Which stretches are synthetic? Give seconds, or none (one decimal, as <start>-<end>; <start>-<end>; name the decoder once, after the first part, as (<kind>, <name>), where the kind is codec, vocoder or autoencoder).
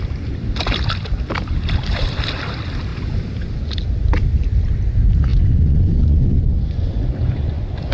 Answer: 5.3-7.9 (vocoder, Vocos)